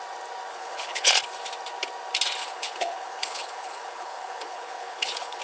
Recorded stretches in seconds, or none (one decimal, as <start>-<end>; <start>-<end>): 0.0-0.5; 1.1-2.4